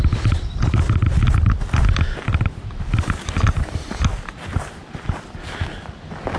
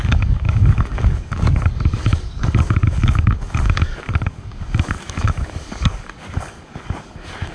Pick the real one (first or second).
first